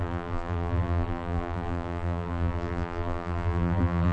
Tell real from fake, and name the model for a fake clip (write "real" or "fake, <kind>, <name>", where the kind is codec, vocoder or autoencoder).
fake, vocoder, BigVGAN v2